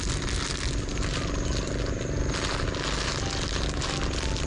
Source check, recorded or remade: recorded